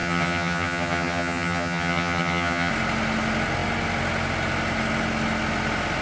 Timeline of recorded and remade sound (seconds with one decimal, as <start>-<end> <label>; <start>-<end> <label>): 0.0-2.7 remade; 2.7-6.0 recorded